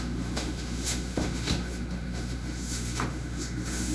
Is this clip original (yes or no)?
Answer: no